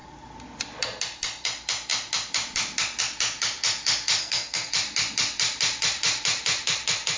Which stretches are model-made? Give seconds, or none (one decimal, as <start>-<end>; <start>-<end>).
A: 4.2-4.7